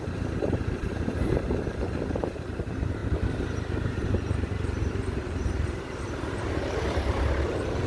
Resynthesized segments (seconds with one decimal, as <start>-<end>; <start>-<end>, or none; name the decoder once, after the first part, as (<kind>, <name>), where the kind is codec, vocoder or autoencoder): 0.0-7.9 (vocoder, BigVGAN v2)